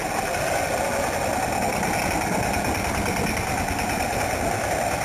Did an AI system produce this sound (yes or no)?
no